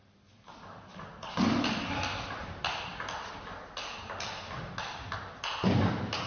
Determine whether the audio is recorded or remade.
recorded